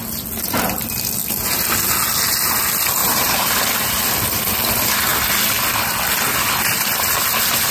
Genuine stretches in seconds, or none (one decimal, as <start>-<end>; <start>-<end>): 0.0-3.0; 3.5-7.7